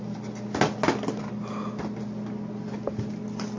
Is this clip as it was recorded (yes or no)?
yes